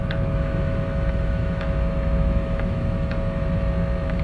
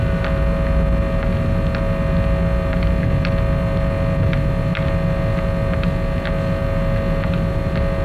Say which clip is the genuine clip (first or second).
second